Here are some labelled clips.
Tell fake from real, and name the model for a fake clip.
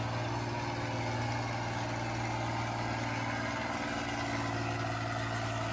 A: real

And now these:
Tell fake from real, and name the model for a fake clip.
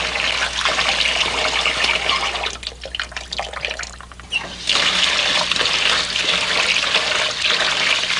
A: real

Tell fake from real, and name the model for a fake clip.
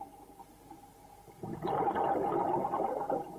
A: real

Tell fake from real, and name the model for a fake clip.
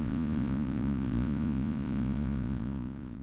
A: fake, vocoder, Vocos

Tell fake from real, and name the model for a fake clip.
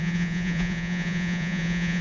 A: fake, vocoder, Vocos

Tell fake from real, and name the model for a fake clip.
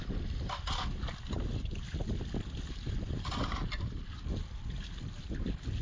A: real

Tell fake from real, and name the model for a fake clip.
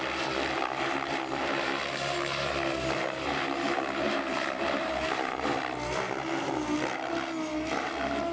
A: real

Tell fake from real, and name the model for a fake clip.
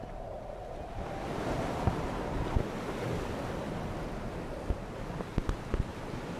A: real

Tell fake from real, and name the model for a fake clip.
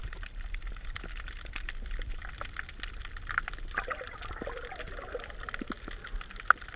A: real